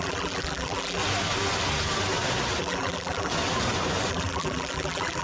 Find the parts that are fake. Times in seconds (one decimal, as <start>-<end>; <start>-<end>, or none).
0.0-1.0; 2.6-3.3; 4.1-5.2